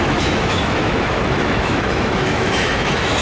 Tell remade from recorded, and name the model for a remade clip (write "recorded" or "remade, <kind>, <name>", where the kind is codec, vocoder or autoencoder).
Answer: remade, autoencoder, DAC-VAE